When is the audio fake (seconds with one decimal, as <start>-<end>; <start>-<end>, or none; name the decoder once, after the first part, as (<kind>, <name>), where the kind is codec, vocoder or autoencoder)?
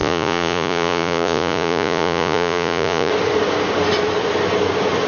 0.0-3.1 (vocoder, Vocos)